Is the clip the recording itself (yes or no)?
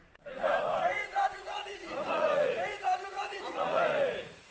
no